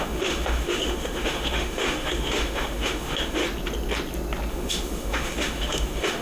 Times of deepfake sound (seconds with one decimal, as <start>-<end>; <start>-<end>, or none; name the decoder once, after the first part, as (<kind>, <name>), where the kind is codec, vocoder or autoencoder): 0.0-3.4 (autoencoder, DAC-VAE); 4.5-6.2

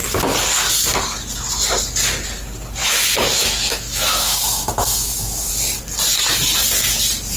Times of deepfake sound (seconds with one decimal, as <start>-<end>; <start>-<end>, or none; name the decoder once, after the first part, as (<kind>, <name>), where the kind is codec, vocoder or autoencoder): 2.8-5.5 (autoencoder, DAC-VAE)

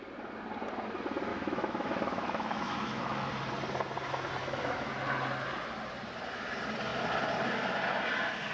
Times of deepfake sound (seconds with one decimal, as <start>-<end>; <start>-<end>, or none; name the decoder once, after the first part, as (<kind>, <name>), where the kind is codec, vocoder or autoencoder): 1.3-3.3 (autoencoder, DAC-VAE); 4.4-4.9

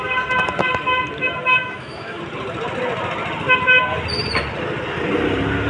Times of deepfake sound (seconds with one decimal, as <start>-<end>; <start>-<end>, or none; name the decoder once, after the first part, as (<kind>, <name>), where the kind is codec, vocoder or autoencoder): 1.6-2.2 (autoencoder, DAC-VAE)

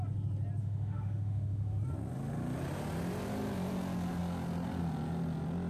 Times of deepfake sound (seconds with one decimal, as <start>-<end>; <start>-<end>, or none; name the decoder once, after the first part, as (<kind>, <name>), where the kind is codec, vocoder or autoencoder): 0.6-1.8 (autoencoder, DAC-VAE)

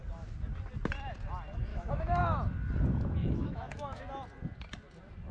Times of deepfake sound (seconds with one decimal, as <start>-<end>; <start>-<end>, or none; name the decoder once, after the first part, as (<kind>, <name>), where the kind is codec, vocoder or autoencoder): 1.7-2.2 (autoencoder, DAC-VAE); 3.2-4.0

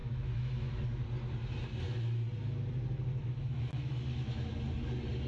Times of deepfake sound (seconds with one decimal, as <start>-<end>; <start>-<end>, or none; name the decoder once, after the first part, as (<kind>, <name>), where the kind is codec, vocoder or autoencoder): 0.0-0.7 (autoencoder, DAC-VAE); 3.2-4.5

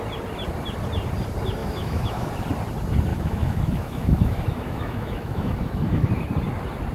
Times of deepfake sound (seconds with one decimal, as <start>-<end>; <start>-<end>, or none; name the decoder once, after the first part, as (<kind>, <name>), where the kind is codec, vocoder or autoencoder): 1.6-2.3 (autoencoder, DAC-VAE); 3.1-6.2